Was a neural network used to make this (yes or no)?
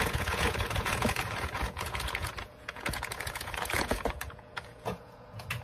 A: yes